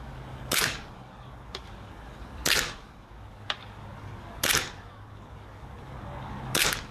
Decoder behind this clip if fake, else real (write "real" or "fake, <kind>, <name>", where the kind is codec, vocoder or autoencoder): fake, codec, DAC